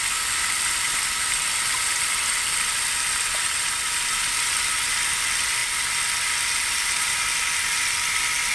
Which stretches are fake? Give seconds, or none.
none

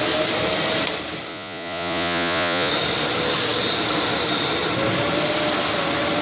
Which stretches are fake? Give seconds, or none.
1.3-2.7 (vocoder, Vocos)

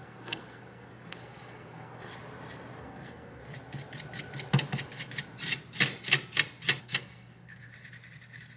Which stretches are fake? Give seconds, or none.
0.0-2.1 (codec, SNAC); 2.8-3.4; 6.8-7.7